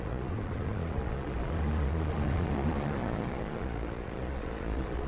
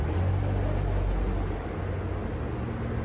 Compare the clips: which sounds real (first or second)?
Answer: second